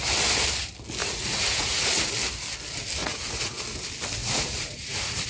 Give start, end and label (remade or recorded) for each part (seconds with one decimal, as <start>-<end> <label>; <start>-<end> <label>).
0.0-1.0 recorded; 1.0-2.1 remade; 2.1-3.0 recorded; 3.0-3.6 remade; 3.6-4.2 recorded; 4.2-5.3 remade